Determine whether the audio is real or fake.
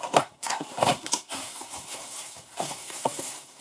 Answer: fake